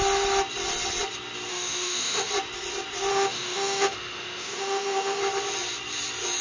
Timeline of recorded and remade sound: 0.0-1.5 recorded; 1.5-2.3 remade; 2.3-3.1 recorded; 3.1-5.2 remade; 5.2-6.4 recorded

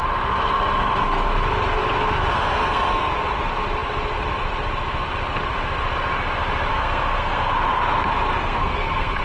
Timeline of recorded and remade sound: 0.0-2.3 recorded; 2.3-3.1 remade; 3.1-6.7 recorded; 6.7-7.5 remade; 7.5-8.4 recorded; 8.4-9.2 remade

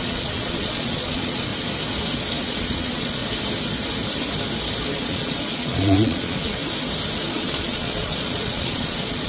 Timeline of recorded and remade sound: 0.0-1.5 remade; 1.5-2.4 recorded; 2.4-3.2 remade; 3.2-4.9 recorded; 4.9-6.6 remade; 6.6-7.3 recorded; 7.3-9.3 remade

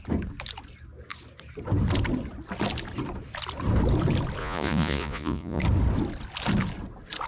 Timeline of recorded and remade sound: 0.0-4.4 recorded; 4.4-5.6 remade; 5.6-7.3 recorded

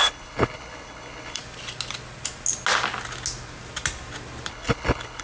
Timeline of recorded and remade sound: 0.0-1.4 remade; 1.4-4.5 recorded; 4.5-5.2 remade

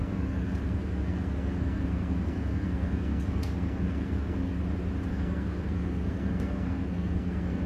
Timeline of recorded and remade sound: 0.0-4.5 remade; 4.5-5.1 recorded; 5.1-7.7 remade

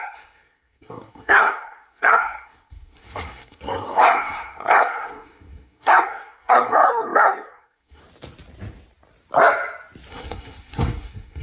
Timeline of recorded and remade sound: 0.0-8.0 remade; 8.0-10.1 recorded; 10.1-11.4 remade